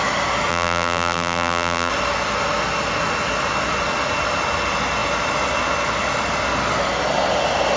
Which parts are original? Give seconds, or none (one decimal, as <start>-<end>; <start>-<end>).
0.0-0.5; 1.9-7.8